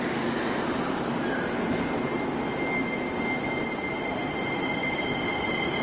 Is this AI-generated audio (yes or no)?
no